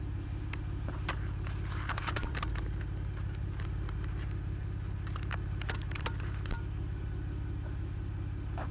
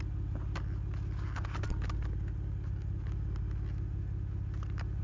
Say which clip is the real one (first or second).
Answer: second